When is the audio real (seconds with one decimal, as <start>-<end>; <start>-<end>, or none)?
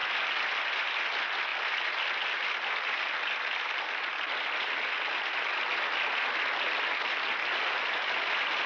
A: 0.0-8.7